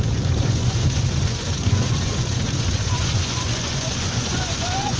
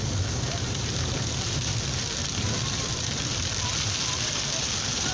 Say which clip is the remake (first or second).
first